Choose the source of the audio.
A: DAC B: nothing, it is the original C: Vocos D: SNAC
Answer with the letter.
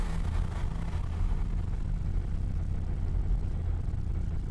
B